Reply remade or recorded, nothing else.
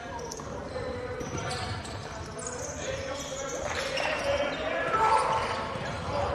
remade